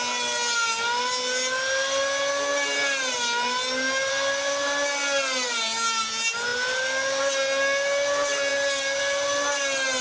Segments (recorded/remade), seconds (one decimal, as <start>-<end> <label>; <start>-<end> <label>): 0.0-10.0 recorded